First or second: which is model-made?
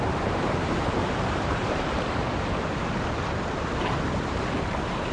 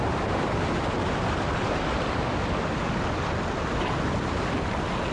first